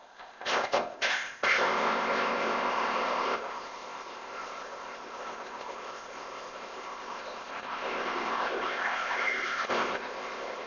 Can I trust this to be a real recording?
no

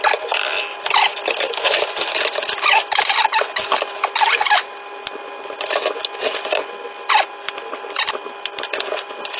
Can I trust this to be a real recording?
yes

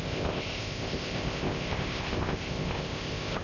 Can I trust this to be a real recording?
no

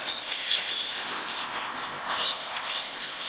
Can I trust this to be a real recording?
no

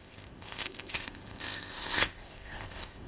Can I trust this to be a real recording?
no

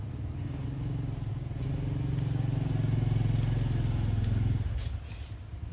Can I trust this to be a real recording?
yes